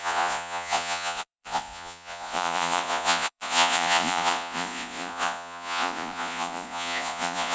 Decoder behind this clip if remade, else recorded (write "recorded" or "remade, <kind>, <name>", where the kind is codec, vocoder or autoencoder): remade, vocoder, Vocos